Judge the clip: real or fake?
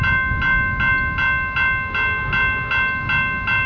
real